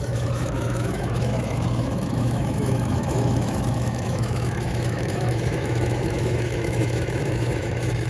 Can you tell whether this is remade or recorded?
remade